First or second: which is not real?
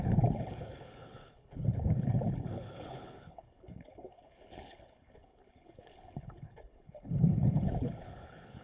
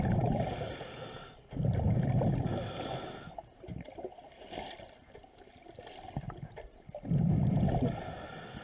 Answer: first